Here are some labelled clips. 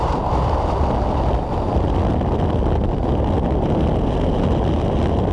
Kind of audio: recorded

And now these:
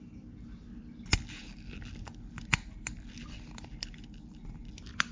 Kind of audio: recorded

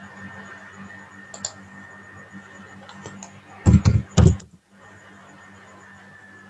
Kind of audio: recorded